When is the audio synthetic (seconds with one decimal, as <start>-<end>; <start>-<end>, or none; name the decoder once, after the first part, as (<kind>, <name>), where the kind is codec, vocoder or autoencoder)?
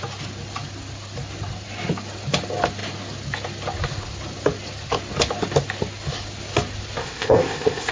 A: 7.0-7.9 (codec, ZipCodec)